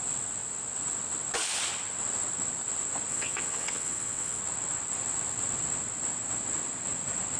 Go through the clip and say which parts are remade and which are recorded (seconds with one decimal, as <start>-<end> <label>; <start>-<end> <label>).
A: 0.0-3.1 recorded; 3.1-4.4 remade; 4.4-7.4 recorded